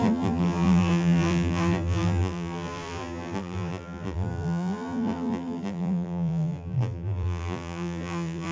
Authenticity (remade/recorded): remade